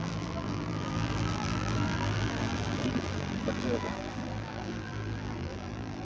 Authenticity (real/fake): fake